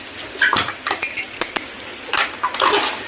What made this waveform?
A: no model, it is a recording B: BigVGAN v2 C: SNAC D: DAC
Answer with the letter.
B